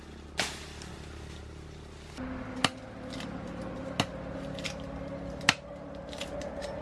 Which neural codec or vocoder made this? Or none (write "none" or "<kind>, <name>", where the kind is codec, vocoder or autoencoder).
none